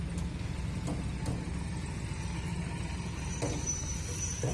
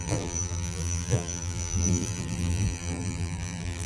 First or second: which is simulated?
second